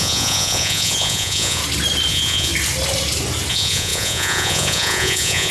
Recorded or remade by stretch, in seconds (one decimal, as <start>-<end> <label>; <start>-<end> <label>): 0.0-1.6 remade; 1.6-2.1 recorded; 2.1-2.5 remade; 2.5-3.5 recorded; 3.5-5.5 remade